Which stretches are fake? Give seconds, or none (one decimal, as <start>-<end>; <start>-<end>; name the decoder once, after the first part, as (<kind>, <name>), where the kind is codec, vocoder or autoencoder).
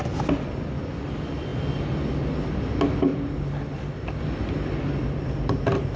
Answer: none